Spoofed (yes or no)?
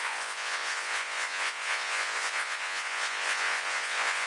yes